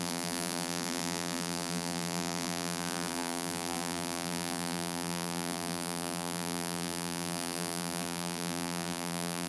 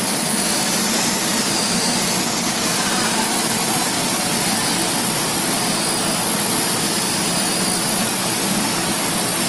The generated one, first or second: first